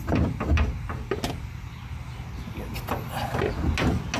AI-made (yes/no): no